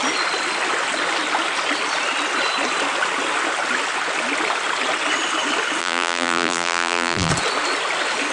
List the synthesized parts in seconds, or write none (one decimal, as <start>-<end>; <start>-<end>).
5.8-7.3